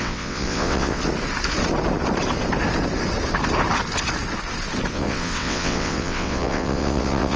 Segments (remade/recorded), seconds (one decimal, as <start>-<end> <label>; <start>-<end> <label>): 0.0-1.0 remade; 1.0-4.9 recorded; 4.9-7.4 remade

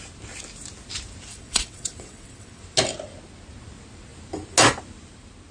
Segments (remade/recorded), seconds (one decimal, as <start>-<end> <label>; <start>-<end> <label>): 0.0-1.3 recorded; 1.3-2.6 remade; 2.6-5.5 recorded

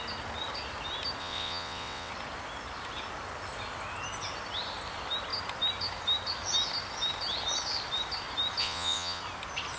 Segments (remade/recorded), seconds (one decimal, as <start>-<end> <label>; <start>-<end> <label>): 0.0-1.2 recorded; 1.2-2.1 remade; 2.1-8.6 recorded; 8.6-9.2 remade; 9.2-9.8 recorded

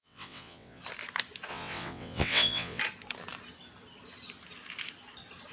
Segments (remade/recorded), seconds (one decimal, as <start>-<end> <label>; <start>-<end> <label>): 0.0-0.8 remade; 0.8-1.5 recorded; 1.5-2.8 remade; 2.8-5.5 recorded

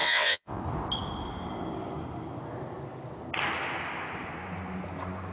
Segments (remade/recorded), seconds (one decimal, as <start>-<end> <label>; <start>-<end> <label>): 0.0-0.6 remade; 0.6-5.3 recorded

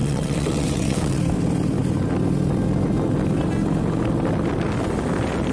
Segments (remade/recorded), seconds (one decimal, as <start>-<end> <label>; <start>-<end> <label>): 0.0-1.2 remade; 1.2-5.5 recorded

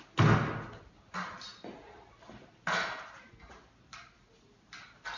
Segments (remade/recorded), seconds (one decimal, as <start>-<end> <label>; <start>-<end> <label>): 0.0-5.2 recorded

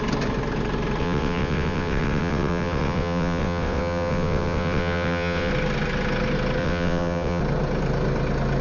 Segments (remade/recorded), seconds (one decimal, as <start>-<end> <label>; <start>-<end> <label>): 0.0-1.0 recorded; 1.0-5.5 remade; 5.5-6.6 recorded; 6.6-7.4 remade; 7.4-8.6 recorded